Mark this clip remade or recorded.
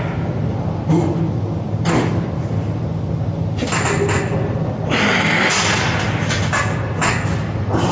recorded